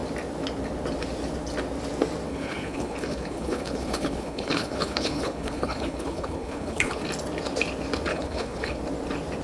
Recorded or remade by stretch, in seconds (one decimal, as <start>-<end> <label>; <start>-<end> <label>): 0.0-2.3 recorded; 2.3-7.0 remade; 7.0-8.1 recorded; 8.1-8.8 remade; 8.8-9.4 recorded